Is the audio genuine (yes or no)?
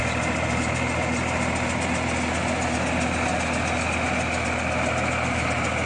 yes